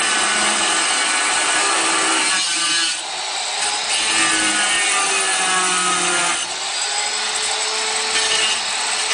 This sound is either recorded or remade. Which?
recorded